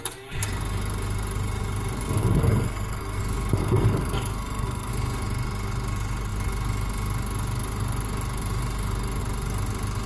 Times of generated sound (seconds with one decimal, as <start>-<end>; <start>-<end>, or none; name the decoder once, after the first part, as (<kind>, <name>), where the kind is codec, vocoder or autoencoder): 2.2-3.2 (codec, SNAC); 3.6-4.9